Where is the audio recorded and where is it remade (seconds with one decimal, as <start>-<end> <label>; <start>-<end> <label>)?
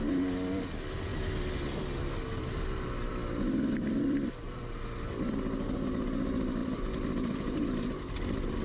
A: 0.0-3.1 recorded; 3.1-4.6 remade; 4.6-6.6 recorded; 6.6-7.6 remade; 7.6-8.6 recorded